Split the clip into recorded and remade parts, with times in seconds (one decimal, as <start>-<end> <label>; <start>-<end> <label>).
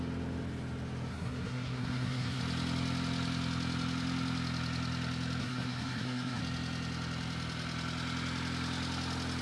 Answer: 0.0-1.1 recorded; 1.1-2.4 remade; 2.4-5.4 recorded; 5.4-6.4 remade; 6.4-9.4 recorded